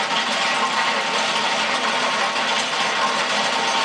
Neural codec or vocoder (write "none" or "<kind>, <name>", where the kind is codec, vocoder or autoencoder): none